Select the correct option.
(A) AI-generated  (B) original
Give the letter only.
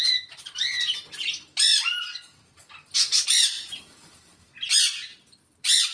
A